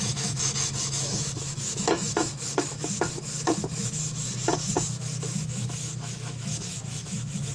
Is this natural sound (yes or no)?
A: no